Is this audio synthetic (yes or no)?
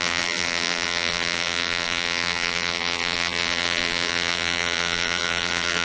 yes